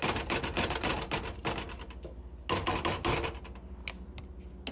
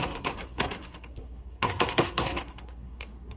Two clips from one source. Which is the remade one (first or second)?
second